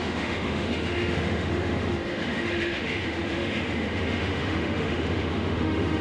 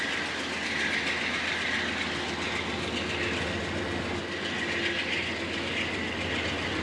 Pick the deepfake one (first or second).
first